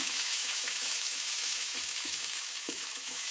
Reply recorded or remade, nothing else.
remade